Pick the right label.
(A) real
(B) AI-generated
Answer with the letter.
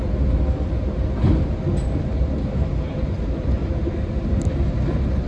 A